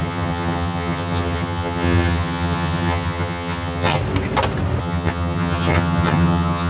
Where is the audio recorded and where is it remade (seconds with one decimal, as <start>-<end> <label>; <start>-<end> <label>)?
0.0-4.0 remade; 4.0-4.8 recorded; 4.8-6.7 remade